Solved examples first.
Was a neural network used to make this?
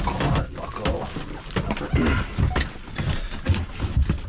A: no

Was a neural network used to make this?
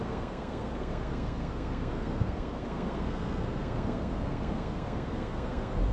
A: yes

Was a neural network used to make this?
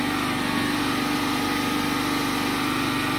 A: no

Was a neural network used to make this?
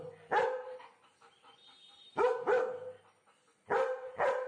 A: no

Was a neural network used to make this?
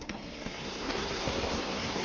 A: yes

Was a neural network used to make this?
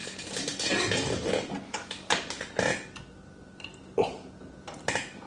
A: no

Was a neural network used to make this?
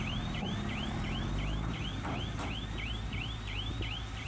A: no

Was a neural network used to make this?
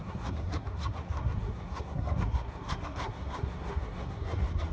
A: yes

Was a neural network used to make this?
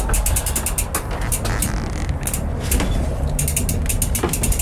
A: no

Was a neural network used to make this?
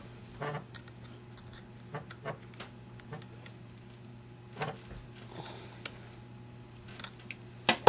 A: no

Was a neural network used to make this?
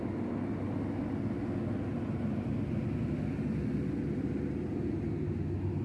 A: no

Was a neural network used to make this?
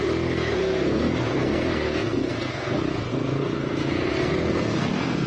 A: yes